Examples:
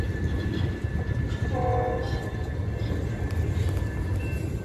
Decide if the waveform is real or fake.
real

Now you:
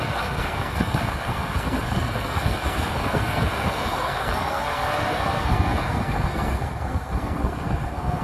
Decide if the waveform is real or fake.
fake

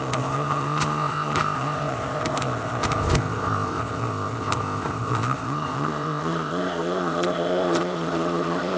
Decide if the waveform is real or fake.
fake